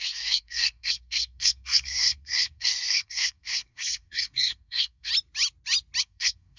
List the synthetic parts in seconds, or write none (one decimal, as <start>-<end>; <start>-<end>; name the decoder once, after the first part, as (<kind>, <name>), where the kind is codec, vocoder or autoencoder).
0.0-5.1 (codec, SNAC); 6.0-6.6

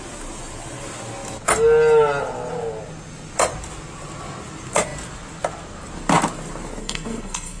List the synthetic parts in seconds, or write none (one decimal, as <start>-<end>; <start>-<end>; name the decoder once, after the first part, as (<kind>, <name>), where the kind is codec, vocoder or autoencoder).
6.8-7.6 (codec, SNAC)